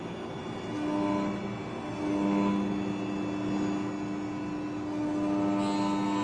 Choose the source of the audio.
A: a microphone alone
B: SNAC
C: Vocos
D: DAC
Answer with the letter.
A